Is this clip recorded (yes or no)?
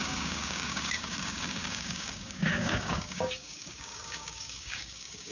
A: no